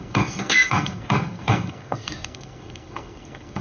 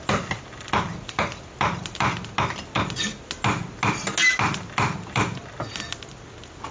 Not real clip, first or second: first